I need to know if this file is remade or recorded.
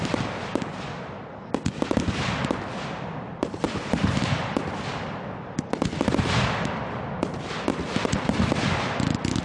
recorded